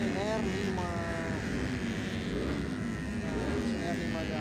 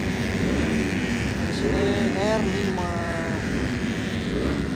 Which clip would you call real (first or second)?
first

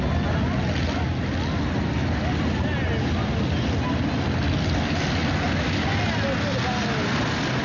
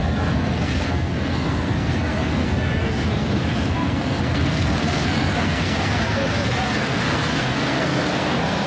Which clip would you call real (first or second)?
first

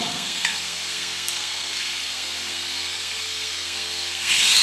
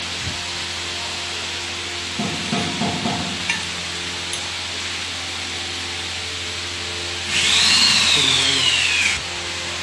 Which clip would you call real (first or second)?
second